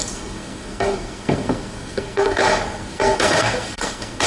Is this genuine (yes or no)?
no